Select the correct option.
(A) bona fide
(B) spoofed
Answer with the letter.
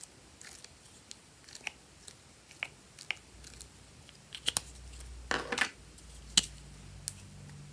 A